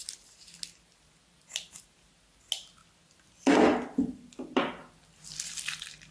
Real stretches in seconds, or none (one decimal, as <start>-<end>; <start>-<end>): 0.0-6.1

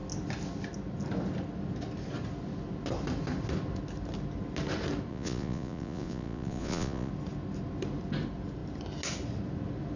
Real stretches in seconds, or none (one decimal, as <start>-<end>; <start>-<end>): 0.0-5.1; 7.1-10.0

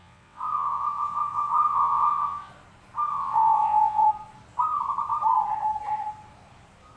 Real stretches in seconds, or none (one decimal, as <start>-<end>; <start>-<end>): 2.5-3.1; 4.1-7.0

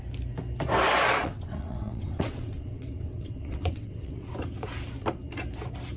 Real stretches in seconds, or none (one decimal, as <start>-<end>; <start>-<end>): 0.0-1.2; 4.3-6.0

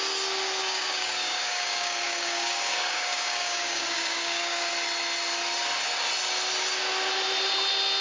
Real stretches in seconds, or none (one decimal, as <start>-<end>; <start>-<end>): 0.0-0.6; 4.7-8.0